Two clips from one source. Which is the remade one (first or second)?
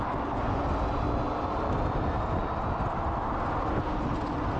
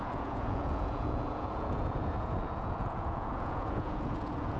second